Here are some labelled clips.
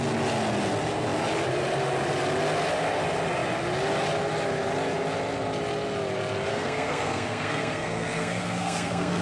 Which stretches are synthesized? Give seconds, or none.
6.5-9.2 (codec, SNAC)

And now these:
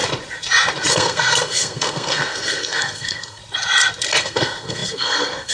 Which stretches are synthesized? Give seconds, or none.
0.9-3.4 (codec, SNAC); 4.2-5.5

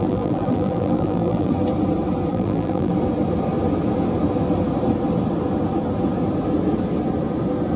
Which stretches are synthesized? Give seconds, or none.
0.0-1.5 (vocoder, BigVGAN v2); 2.3-2.9

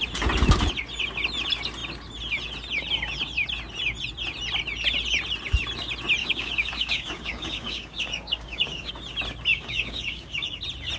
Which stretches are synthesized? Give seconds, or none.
6.2-8.9 (codec, DAC); 9.5-10.6

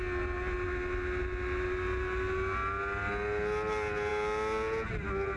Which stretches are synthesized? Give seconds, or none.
none

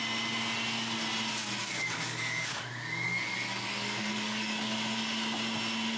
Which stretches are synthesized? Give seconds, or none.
1.4-4.7 (codec, DAC)